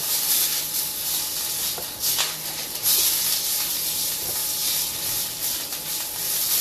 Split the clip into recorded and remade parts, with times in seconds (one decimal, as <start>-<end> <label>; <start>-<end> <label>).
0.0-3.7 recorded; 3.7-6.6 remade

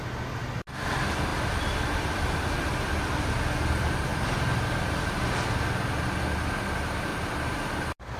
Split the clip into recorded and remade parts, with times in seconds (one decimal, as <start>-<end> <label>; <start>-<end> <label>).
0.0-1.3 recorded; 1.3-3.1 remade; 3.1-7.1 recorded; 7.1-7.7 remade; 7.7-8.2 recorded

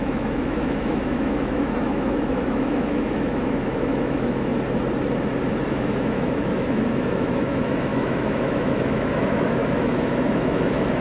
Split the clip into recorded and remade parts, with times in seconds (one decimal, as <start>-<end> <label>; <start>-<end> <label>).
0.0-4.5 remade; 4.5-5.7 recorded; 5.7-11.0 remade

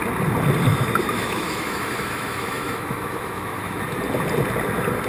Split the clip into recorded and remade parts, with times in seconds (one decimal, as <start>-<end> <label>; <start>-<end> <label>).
0.0-0.7 recorded; 0.7-3.8 remade; 3.8-5.1 recorded